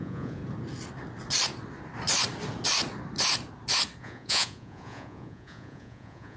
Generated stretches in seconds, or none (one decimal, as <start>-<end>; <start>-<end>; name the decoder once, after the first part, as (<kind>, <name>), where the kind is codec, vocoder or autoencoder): 0.0-0.4 (vocoder, Vocos); 4.0-6.4